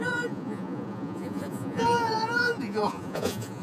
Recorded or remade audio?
remade